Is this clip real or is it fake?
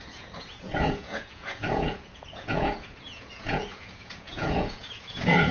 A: fake